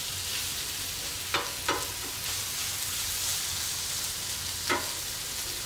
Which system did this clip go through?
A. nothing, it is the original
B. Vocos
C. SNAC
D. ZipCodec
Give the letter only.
A